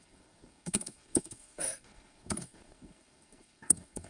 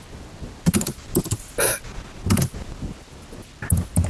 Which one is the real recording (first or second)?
second